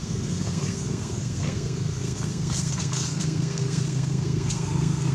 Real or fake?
fake